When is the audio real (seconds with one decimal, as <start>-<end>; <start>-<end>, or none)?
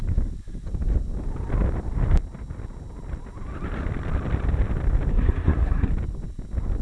0.0-5.1; 5.9-6.8